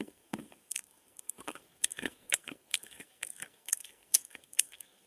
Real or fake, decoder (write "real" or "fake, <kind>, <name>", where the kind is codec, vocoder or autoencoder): fake, codec, SNAC